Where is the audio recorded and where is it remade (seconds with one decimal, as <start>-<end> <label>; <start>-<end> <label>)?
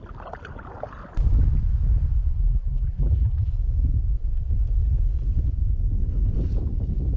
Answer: 0.0-2.4 recorded; 2.4-3.5 remade; 3.5-7.2 recorded